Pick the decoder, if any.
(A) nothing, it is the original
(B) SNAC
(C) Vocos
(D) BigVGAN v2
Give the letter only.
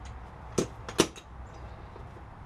A